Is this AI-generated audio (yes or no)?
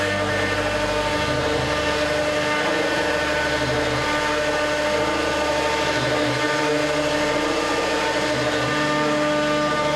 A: no